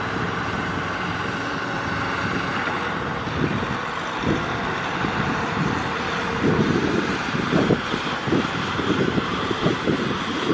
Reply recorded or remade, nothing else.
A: remade